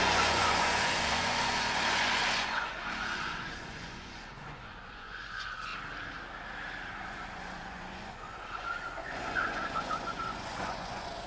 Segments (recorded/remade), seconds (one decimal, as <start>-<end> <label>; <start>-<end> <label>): 0.0-5.7 remade; 5.7-7.0 recorded; 7.0-11.3 remade